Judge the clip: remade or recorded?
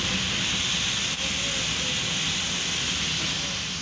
recorded